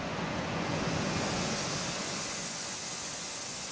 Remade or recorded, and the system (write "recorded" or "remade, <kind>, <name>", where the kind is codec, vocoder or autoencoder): remade, vocoder, Vocos